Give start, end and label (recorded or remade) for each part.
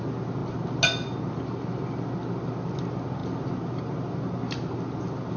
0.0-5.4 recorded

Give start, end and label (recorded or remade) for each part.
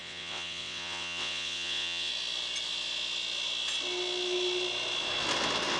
0.0-2.1 remade; 2.1-5.8 recorded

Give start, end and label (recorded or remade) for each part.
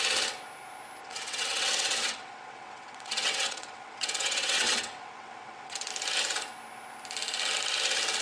0.0-1.0 recorded; 1.0-5.9 remade; 5.9-8.2 recorded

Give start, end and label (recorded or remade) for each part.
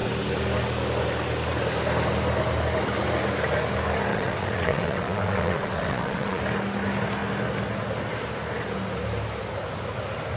0.0-4.1 recorded; 4.1-6.4 remade; 6.4-10.4 recorded